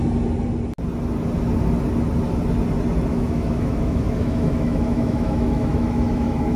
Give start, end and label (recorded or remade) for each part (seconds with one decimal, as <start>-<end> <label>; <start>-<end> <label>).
0.0-3.1 recorded; 3.1-6.6 remade